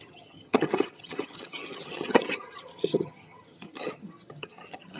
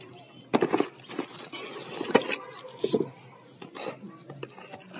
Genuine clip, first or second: second